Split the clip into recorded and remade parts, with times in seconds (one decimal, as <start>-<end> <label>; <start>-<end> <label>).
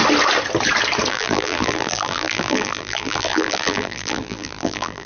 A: 0.0-1.1 recorded; 1.1-5.1 remade